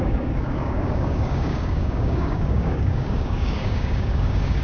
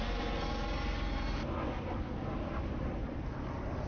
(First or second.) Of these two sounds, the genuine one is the second